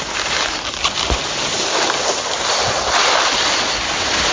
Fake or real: real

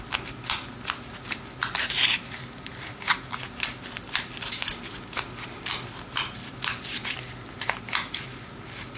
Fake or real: real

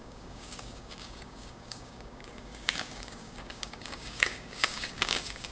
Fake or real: fake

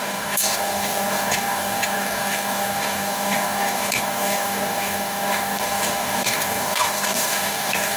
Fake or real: fake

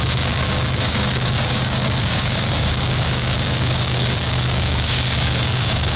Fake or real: fake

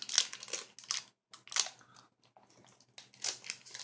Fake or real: real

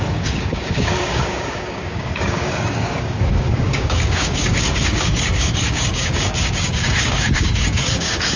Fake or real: fake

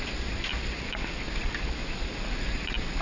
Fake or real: real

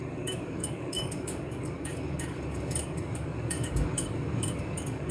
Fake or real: fake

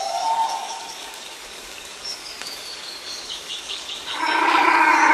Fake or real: fake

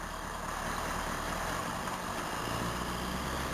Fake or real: real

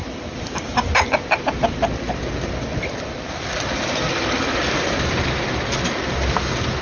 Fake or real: real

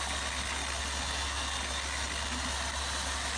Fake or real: real